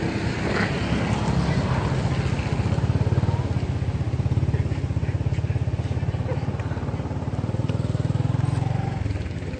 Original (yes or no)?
yes